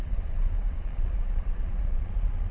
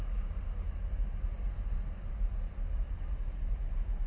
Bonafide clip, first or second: second